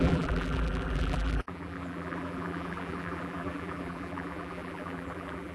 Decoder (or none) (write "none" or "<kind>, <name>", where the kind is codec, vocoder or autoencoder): vocoder, BigVGAN v2